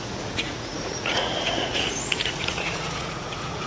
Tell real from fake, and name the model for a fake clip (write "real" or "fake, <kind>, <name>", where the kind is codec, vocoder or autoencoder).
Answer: fake, vocoder, Vocos